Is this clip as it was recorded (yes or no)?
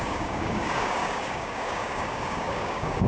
no